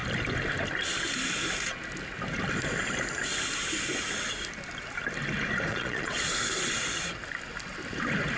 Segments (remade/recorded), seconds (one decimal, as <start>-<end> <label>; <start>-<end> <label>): 0.0-5.7 recorded; 5.7-6.3 remade; 6.3-8.4 recorded